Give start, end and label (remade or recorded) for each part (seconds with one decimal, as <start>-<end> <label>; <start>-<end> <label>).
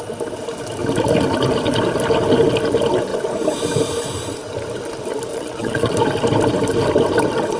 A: 0.0-5.3 recorded; 5.3-5.9 remade; 5.9-7.6 recorded